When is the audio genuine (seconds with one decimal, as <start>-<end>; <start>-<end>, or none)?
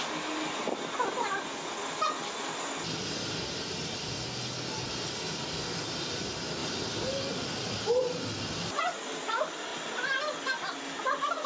0.0-6.6; 8.8-11.5